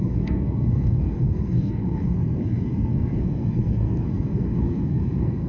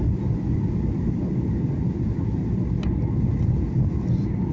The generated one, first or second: first